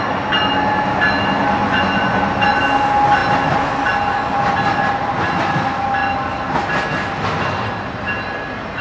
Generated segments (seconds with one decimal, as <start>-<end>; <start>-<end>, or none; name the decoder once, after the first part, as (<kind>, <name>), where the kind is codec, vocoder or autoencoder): 1.6-2.2 (vocoder, Vocos)